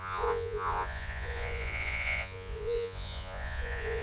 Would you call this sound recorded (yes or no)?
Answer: no